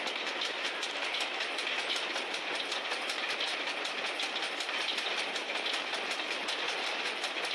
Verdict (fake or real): real